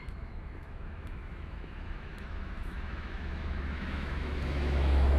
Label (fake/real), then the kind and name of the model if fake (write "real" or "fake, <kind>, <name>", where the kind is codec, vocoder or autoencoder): fake, autoencoder, DAC-VAE